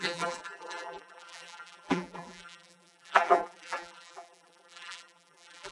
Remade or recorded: remade